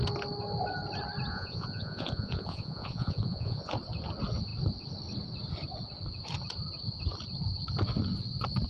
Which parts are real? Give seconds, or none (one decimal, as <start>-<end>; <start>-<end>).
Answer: 0.0-1.3; 3.7-8.7

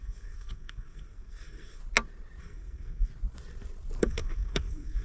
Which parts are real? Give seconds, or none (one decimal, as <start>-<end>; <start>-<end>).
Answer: 1.8-2.4; 3.1-4.0

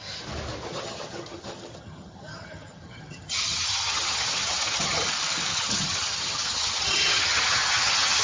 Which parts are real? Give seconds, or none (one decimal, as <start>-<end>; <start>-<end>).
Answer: 0.0-0.7; 5.1-5.5